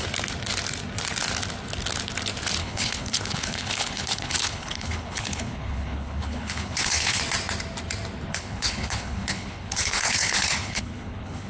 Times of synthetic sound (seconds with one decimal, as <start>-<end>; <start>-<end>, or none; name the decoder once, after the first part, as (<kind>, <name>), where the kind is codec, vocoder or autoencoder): 2.6-7.2 (codec, HILCodec); 8.3-11.5